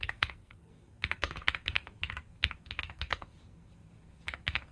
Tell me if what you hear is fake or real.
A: fake